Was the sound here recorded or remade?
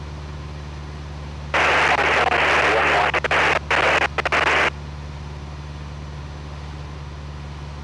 recorded